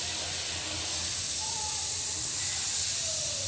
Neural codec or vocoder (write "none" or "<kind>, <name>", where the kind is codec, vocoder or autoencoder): none